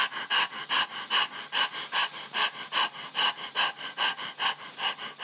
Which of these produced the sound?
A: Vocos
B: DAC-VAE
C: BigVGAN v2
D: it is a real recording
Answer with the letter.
D